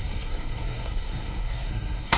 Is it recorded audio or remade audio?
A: remade